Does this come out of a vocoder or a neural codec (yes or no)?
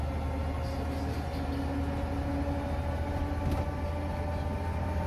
no